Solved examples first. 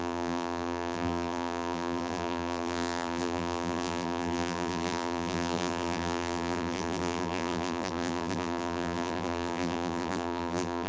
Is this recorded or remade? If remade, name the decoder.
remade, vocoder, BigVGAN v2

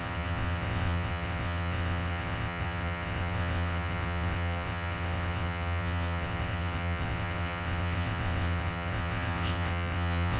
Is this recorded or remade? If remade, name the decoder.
remade, vocoder, WaveNeXt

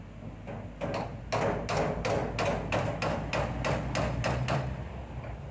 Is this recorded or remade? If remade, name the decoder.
recorded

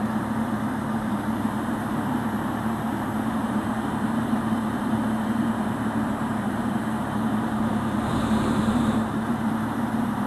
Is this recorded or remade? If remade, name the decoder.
remade, vocoder, BigVGAN v2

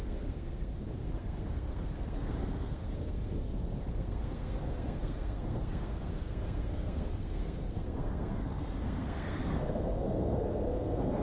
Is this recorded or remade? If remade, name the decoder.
remade, codec, SNAC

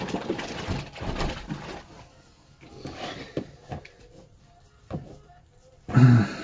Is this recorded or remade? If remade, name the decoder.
recorded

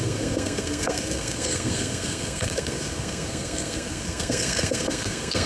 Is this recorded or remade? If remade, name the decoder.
remade, codec, SNAC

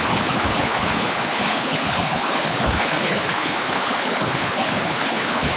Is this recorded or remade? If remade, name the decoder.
remade, codec, HILCodec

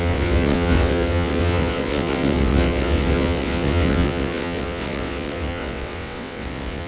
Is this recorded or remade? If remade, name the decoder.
remade, vocoder, WaveNeXt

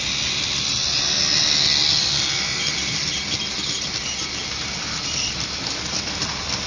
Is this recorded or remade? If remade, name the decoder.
recorded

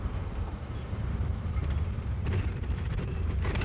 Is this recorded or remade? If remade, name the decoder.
remade, vocoder, BigVGAN v2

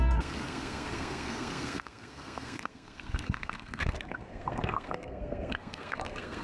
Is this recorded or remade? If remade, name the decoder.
remade, codec, SNAC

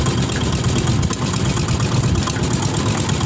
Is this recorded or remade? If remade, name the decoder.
recorded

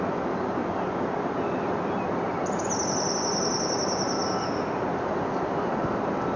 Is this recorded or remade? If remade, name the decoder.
recorded